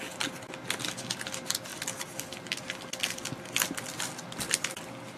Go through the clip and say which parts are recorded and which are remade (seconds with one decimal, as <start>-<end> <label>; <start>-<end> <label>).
0.0-5.2 recorded